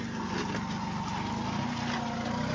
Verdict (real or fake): real